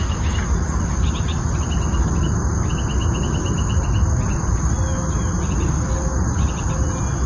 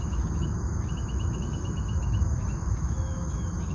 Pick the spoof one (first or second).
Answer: second